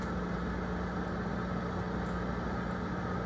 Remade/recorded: recorded